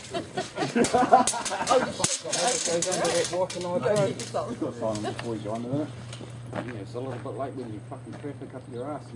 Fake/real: real